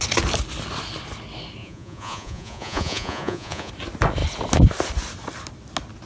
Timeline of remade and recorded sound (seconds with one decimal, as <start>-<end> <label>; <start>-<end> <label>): 0.0-1.6 recorded; 1.6-3.7 remade; 3.7-6.1 recorded